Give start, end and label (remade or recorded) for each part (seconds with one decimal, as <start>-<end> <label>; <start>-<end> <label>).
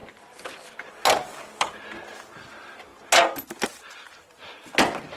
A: 0.0-0.9 remade; 0.9-5.2 recorded